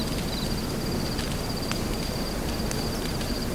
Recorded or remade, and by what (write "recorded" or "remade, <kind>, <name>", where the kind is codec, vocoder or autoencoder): recorded